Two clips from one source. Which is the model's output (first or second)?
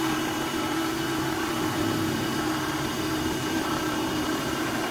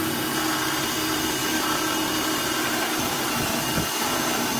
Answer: first